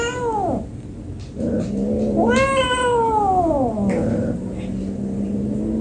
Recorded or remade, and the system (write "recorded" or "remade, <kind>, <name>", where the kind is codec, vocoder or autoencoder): recorded